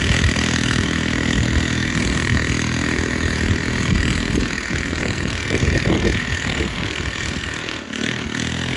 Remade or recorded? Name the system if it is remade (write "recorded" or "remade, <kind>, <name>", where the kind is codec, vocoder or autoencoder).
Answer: remade, codec, SNAC